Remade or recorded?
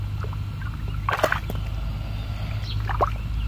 recorded